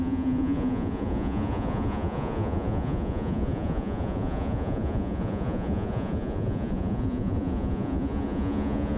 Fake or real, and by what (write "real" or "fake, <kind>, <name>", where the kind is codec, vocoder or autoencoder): fake, vocoder, Vocos